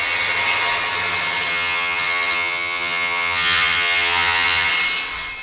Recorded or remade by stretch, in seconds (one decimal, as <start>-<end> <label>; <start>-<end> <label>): 0.0-1.5 recorded; 1.5-4.7 remade; 4.7-5.4 recorded